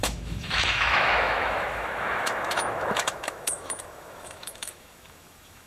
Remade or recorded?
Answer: remade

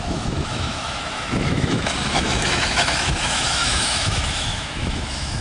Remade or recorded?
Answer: remade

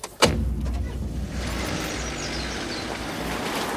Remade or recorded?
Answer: recorded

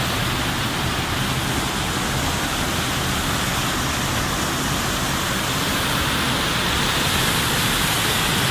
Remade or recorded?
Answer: recorded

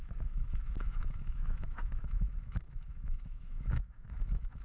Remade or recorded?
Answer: remade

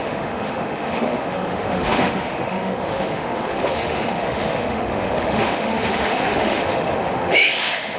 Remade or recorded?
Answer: remade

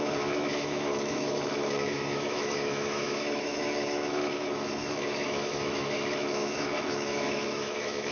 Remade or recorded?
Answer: remade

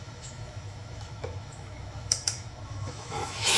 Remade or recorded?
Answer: remade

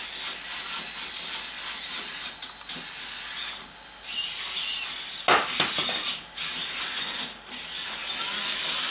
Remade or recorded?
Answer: recorded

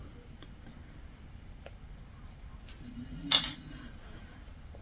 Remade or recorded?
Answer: recorded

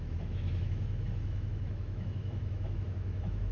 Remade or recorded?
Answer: remade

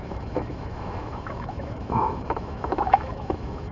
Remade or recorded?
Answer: remade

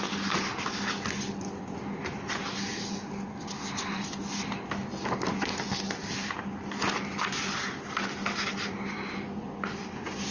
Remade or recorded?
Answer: recorded